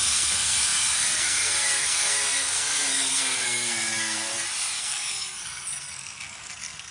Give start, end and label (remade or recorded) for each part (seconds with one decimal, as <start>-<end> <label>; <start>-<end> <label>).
0.0-4.3 remade; 4.3-4.8 recorded; 4.8-6.9 remade